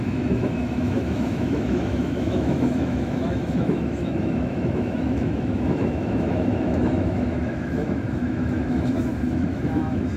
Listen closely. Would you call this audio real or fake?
fake